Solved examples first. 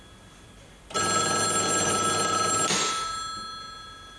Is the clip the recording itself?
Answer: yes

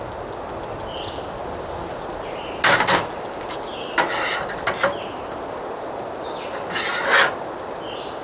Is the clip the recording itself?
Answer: yes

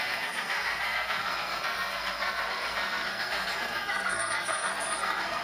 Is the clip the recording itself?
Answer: no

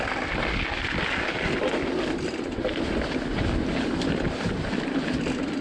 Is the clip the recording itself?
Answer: yes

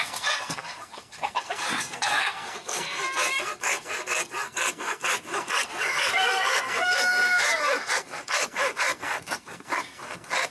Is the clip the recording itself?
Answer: no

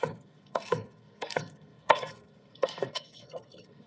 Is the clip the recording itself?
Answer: no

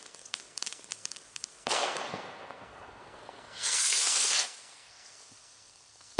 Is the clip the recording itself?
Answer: no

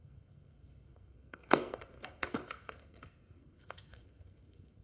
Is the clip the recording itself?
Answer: no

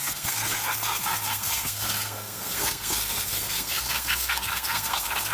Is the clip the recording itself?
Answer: no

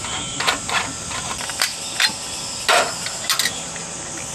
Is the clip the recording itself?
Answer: yes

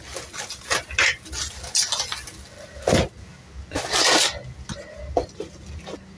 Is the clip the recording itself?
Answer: yes